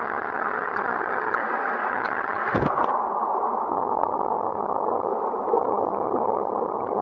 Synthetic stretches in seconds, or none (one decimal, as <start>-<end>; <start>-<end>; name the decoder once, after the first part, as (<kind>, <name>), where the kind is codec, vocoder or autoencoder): 0.0-1.4 (vocoder, HiFi-GAN); 1.9-2.4; 3.7-5.1; 5.6-7.0

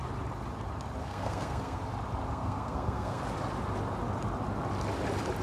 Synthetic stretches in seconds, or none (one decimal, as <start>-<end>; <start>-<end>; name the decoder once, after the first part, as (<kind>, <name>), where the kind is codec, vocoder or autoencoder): 1.0-1.8 (codec, SNAC); 2.3-3.2

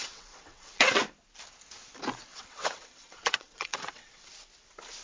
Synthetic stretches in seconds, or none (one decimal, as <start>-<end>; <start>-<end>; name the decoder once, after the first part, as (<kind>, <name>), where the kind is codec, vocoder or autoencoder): 0.0-1.0 (vocoder, WaveNeXt); 2.3-4.3